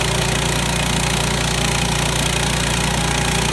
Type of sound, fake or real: real